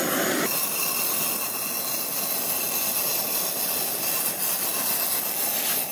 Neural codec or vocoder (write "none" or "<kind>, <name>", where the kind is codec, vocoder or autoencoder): none